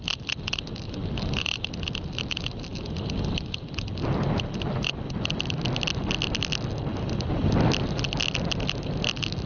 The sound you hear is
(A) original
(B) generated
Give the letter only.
A